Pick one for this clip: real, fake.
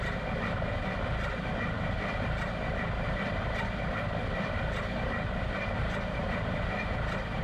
real